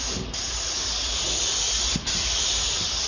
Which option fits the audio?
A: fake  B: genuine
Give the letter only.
B